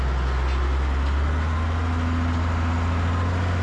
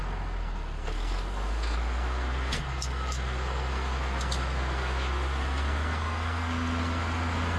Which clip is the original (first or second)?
first